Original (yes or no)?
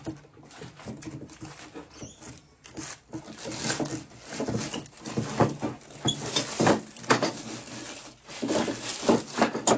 yes